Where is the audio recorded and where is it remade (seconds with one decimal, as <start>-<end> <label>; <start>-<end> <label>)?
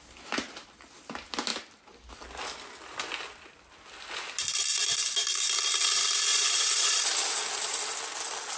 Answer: 0.0-6.3 recorded; 6.3-7.0 remade; 7.0-8.6 recorded